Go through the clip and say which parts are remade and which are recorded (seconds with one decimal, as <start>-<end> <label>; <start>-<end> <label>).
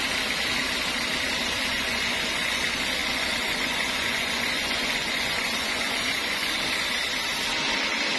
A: 0.0-1.7 recorded; 1.7-2.6 remade; 2.6-3.0 recorded; 3.0-6.6 remade; 6.6-8.2 recorded